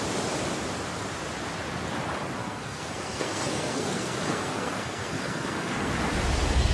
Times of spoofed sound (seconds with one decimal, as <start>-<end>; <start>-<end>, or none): 2.4-5.9